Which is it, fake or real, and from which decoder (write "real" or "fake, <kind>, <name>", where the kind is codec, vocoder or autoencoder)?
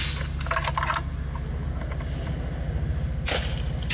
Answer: real